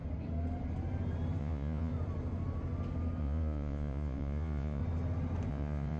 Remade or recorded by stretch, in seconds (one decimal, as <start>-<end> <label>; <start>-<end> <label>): 0.0-1.4 recorded; 1.4-1.9 remade; 1.9-3.2 recorded; 3.2-4.8 remade; 4.8-5.5 recorded; 5.5-6.0 remade